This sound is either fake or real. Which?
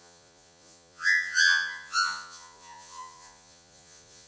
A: fake